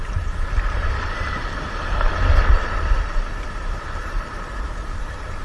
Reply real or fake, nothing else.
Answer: fake